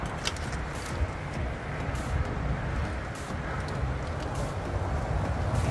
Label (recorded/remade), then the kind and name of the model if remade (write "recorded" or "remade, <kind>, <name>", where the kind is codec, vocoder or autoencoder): recorded